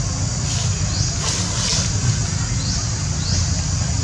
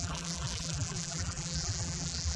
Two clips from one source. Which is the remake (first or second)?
second